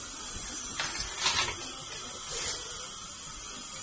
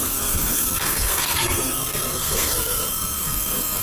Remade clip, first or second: second